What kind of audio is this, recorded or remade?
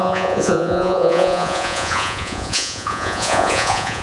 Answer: remade